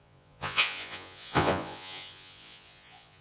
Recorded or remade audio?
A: remade